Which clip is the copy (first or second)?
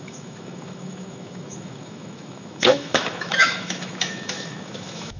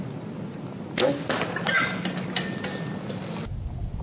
first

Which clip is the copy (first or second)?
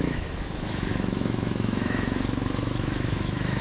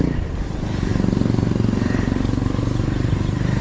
first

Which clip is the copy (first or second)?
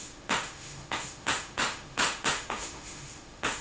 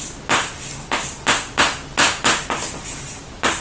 first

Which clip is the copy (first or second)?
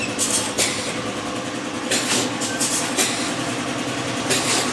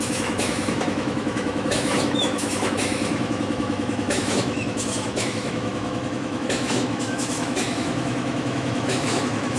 second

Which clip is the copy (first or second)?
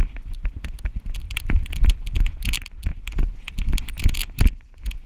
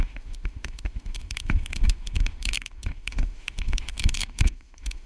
second